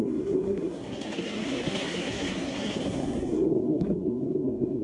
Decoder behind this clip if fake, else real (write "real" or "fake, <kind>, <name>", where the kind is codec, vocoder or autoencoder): fake, codec, SNAC